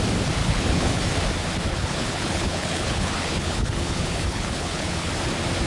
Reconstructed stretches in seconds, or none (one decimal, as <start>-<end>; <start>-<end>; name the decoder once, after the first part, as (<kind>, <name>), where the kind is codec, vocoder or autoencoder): 0.4-1.0 (codec, HILCodec); 1.7-5.1

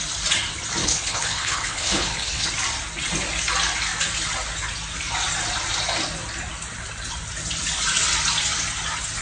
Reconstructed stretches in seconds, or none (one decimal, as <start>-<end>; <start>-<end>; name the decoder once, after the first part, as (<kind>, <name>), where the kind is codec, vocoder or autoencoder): 0.8-2.5 (codec, HILCodec)

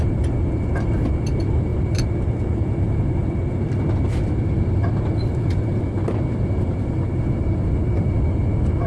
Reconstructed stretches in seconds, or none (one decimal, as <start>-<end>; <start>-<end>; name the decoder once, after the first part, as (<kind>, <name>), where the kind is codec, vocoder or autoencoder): none

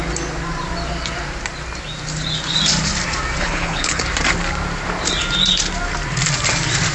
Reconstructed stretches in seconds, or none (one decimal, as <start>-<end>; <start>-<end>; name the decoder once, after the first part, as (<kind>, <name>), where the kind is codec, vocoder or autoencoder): 3.4-4.0 (codec, HILCodec)

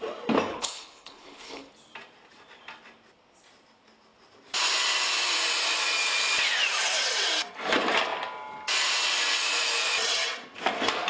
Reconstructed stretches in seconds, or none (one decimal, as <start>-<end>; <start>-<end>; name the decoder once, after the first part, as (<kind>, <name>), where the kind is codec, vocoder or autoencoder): 0.5-1.7 (codec, HILCodec)